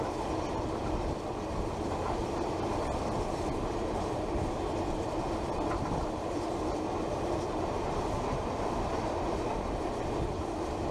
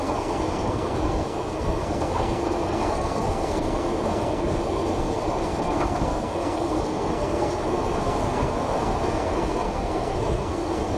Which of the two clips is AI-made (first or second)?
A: second